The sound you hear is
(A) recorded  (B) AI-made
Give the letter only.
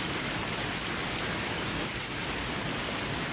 A